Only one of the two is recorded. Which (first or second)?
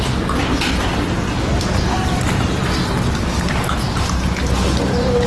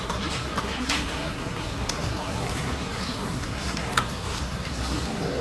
first